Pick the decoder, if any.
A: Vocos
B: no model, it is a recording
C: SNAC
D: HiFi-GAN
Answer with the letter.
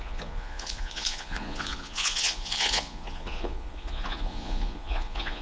A